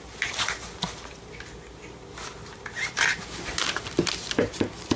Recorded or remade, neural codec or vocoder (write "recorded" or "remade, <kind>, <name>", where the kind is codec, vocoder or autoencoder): recorded